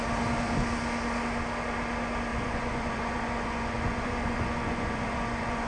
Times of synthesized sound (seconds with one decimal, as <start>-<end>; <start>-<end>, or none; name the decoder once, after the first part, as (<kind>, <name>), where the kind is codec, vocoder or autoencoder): 2.3-5.7 (vocoder, Vocos)